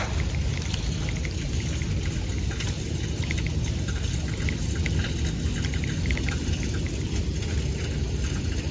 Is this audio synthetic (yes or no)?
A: no